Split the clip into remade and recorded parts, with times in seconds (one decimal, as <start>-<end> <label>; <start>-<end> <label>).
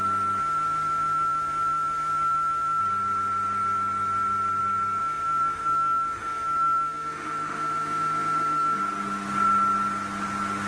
0.0-0.4 recorded; 0.4-2.8 remade; 2.8-5.0 recorded; 5.0-8.8 remade; 8.8-10.7 recorded